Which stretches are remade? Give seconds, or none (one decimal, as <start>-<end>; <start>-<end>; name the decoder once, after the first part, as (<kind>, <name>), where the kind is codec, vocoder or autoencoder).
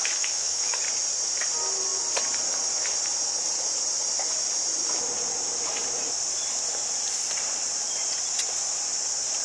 0.0-0.8 (autoencoder, DAC-VAE)